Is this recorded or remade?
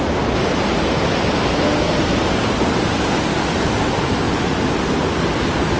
recorded